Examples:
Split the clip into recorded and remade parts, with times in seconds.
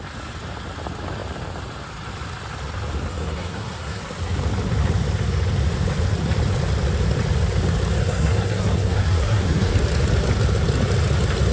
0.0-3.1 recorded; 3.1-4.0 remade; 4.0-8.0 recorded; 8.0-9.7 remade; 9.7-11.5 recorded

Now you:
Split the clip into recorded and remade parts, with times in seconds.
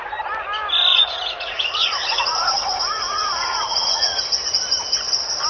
0.0-0.9 recorded; 0.9-4.2 remade; 4.2-5.5 recorded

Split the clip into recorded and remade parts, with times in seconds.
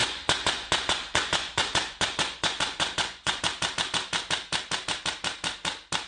0.0-3.4 remade; 3.4-6.1 recorded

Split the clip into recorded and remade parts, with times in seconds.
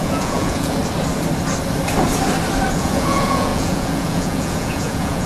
0.0-0.8 remade; 0.8-2.7 recorded; 2.7-5.3 remade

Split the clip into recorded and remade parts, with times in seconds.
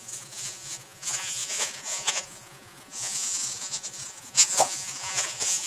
0.0-5.7 remade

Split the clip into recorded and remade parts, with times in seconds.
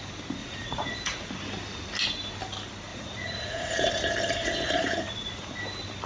0.0-0.4 recorded; 0.4-1.3 remade; 1.3-2.9 recorded; 2.9-3.9 remade; 3.9-4.4 recorded; 4.4-5.5 remade; 5.5-6.1 recorded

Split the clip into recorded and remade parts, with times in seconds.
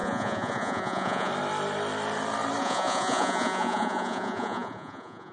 0.0-1.3 remade; 1.3-2.6 recorded; 2.6-5.3 remade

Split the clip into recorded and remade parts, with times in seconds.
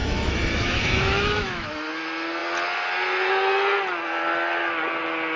0.0-1.9 remade; 1.9-5.4 recorded